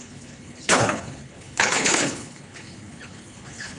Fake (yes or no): yes